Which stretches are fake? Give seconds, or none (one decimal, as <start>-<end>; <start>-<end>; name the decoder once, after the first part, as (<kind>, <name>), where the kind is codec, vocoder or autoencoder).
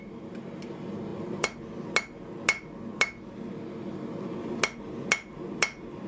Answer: none